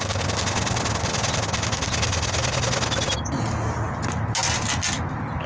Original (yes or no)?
yes